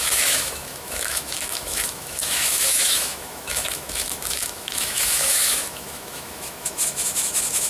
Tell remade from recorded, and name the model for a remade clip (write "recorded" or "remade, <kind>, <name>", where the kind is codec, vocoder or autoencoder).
remade, autoencoder, DAC-VAE